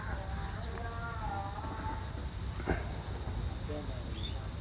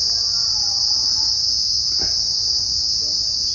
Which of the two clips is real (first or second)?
first